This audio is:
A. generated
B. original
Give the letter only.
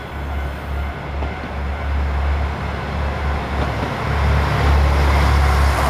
B